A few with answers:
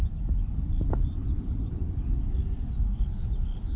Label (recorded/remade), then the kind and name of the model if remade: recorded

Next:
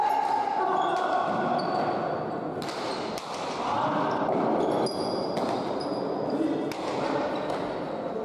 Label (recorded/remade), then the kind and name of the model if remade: recorded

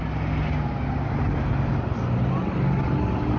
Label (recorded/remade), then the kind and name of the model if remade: recorded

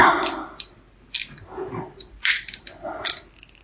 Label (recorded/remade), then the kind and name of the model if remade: recorded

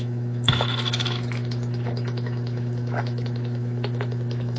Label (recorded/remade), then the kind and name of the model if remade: remade, autoencoder, DAC-VAE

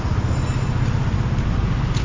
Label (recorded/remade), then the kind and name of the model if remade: recorded